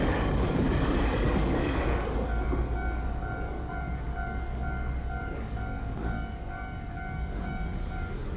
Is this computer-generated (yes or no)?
yes